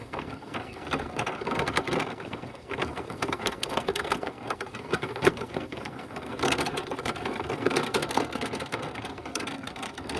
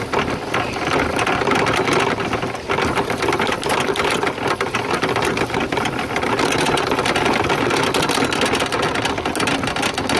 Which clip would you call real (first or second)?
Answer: second